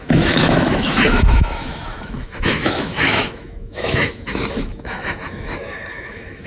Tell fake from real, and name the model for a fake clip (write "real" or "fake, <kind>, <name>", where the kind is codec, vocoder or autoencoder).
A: fake, autoencoder, DAC-VAE